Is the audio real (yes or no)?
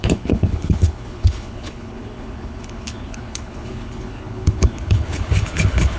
no